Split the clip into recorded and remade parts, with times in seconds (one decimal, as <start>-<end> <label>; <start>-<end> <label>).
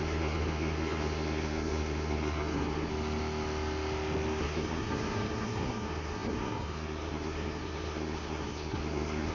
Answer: 0.0-2.9 remade; 2.9-4.4 recorded; 4.4-9.3 remade